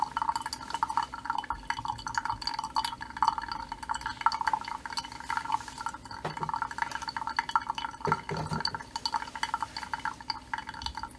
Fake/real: real